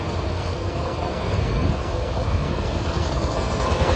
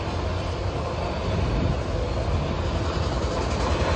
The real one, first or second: second